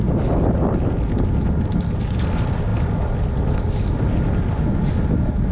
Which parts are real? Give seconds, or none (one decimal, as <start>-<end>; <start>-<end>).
0.0-5.5